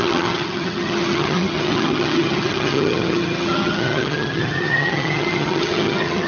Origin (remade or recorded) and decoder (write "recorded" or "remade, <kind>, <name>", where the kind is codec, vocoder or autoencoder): remade, vocoder, HiFi-GAN